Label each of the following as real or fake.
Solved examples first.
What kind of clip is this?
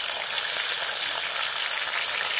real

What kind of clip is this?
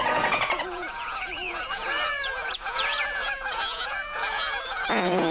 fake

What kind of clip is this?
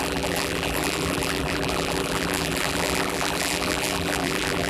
fake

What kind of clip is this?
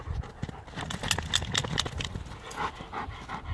real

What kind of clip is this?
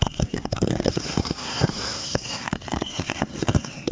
fake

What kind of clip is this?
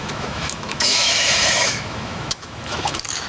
fake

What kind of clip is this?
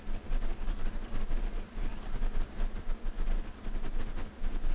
real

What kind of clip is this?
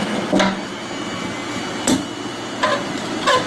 real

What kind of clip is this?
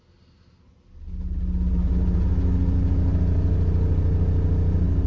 real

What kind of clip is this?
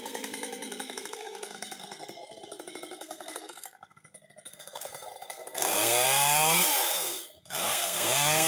fake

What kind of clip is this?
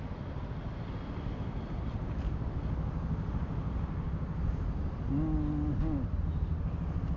real